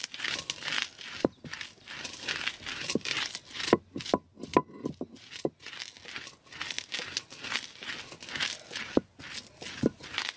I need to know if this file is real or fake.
real